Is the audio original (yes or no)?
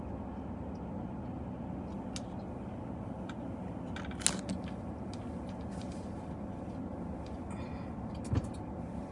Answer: yes